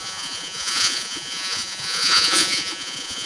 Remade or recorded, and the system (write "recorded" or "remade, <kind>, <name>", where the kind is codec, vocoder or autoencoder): remade, vocoder, Vocos